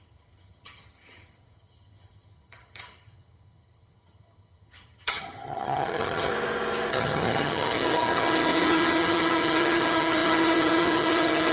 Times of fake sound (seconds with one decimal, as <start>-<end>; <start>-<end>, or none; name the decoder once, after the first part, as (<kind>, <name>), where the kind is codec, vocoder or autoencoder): 0.0-6.3 (vocoder, HiFi-GAN); 6.9-11.5